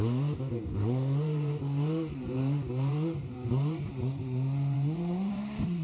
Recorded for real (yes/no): no